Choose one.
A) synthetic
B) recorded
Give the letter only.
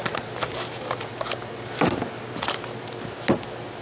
B